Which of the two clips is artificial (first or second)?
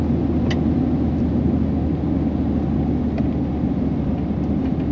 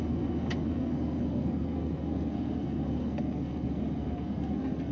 second